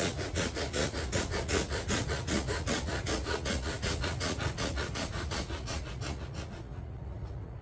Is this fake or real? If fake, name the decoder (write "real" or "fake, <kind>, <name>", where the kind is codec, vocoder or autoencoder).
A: fake, vocoder, Vocos